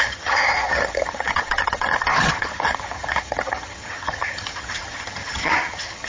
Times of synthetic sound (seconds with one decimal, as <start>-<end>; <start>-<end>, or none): 0.0-6.1